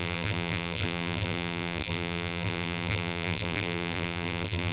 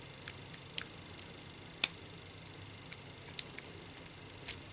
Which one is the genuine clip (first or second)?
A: second